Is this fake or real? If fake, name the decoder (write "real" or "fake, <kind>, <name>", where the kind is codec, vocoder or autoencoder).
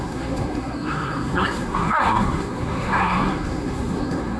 fake, codec, SNAC